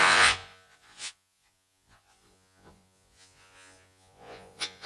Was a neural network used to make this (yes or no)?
yes